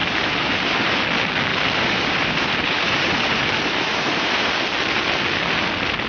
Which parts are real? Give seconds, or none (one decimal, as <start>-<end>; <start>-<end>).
1.0-1.5; 4.5-6.1